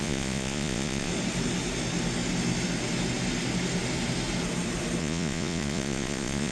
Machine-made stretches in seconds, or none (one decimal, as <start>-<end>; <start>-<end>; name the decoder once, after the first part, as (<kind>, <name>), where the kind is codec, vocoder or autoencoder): 0.0-1.1 (vocoder, Vocos); 5.0-6.5